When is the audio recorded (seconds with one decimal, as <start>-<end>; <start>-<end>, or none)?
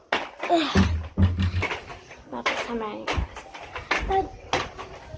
0.0-5.2